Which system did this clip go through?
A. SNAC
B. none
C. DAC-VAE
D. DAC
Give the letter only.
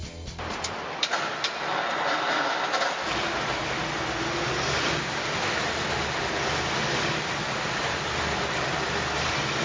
B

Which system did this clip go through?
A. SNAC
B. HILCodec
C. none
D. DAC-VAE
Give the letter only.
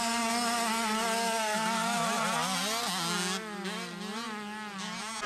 C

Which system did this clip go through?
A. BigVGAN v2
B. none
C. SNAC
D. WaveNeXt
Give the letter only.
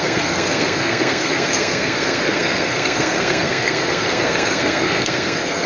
C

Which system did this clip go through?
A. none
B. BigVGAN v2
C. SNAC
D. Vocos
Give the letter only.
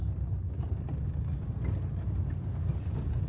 A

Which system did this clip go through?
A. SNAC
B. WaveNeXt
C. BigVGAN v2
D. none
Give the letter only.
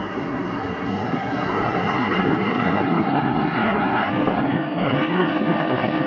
A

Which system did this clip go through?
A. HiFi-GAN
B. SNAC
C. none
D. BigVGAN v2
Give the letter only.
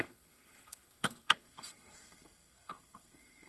B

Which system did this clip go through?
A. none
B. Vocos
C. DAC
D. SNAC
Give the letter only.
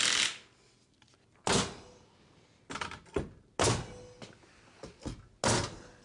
A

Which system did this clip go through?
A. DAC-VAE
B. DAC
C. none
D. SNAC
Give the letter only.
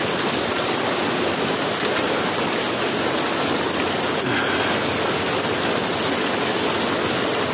C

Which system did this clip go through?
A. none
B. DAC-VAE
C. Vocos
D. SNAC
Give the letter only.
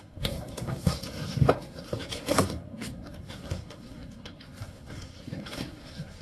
D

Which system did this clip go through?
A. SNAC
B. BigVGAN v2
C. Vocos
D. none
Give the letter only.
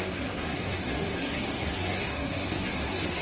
A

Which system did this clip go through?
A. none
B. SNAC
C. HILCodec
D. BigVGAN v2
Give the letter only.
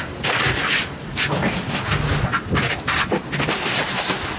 A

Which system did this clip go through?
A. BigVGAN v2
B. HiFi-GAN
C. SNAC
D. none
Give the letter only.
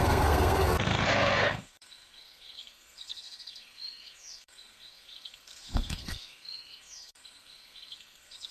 C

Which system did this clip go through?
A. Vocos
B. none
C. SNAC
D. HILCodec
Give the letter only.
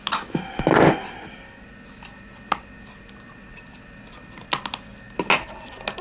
B